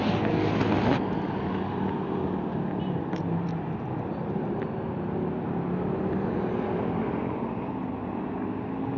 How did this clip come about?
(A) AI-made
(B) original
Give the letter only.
B